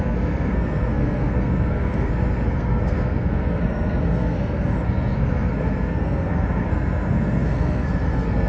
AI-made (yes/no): yes